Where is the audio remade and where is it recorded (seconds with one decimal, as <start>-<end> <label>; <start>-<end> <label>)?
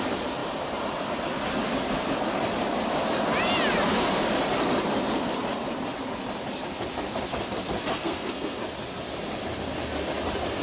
0.0-7.9 recorded; 7.9-8.6 remade; 8.6-10.6 recorded